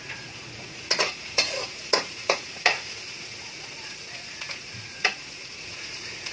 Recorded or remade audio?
remade